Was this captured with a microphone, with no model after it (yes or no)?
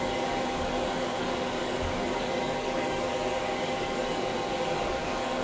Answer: no